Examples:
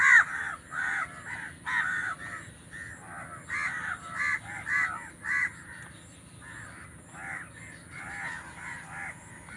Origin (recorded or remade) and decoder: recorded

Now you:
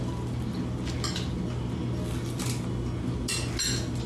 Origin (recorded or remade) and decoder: recorded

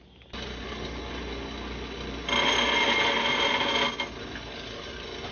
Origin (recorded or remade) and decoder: recorded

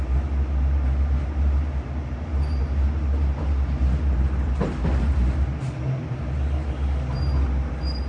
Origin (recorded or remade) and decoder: recorded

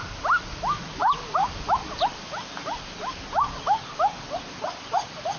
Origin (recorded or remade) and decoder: recorded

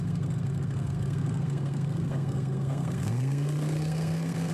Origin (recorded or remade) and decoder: remade, codec, SNAC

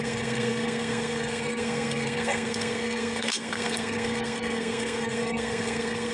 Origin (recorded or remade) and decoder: remade, codec, SNAC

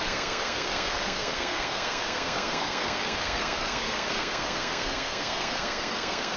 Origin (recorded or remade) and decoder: remade, codec, SNAC